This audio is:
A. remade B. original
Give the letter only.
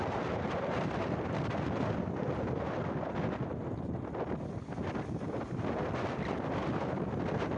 B